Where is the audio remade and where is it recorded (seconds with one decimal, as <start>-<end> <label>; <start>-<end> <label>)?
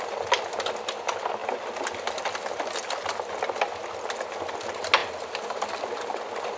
0.0-1.4 recorded; 1.4-2.7 remade; 2.7-5.0 recorded; 5.0-5.8 remade; 5.8-6.6 recorded